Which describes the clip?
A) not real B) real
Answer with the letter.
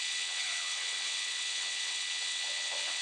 A